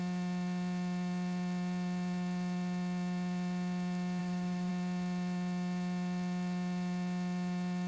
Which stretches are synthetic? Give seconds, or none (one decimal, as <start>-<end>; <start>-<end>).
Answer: 4.2-4.7